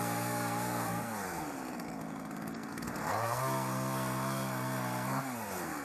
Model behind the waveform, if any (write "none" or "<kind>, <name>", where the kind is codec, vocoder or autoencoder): codec, SNAC